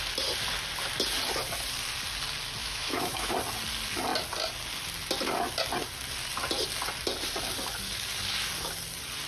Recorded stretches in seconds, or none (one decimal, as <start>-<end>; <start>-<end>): 0.0-2.6; 3.3-9.3